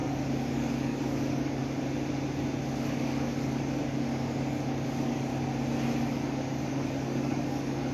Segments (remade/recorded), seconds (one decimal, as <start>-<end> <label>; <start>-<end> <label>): 0.0-1.6 remade; 1.6-2.7 recorded; 2.7-5.3 remade; 5.3-6.1 recorded; 6.1-7.9 remade